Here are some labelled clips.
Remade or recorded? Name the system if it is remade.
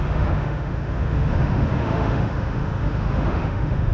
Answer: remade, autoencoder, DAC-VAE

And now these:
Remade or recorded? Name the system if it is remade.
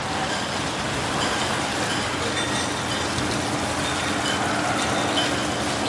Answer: recorded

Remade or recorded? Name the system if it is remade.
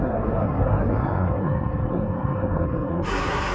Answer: remade, codec, SNAC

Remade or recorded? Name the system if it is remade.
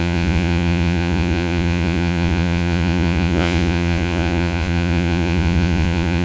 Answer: remade, vocoder, Vocos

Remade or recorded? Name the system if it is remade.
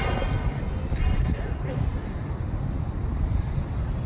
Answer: recorded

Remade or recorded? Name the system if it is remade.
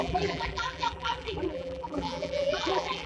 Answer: remade, vocoder, BigVGAN v2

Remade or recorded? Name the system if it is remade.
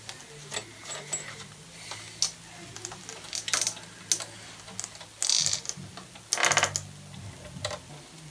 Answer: recorded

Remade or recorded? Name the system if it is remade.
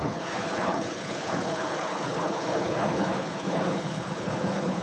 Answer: remade, codec, HILCodec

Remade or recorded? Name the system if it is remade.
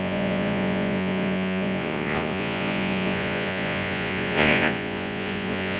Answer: remade, vocoder, Vocos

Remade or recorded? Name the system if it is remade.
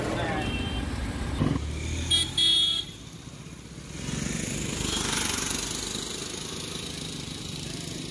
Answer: recorded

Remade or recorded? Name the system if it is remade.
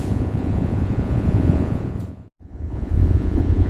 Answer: remade, vocoder, Vocos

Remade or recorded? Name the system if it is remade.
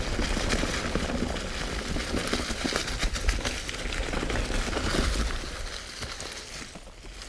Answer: recorded